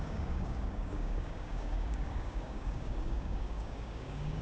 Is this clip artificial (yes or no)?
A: yes